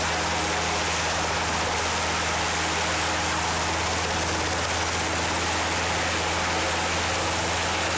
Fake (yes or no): no